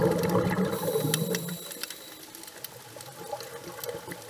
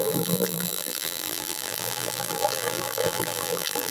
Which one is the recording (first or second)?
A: first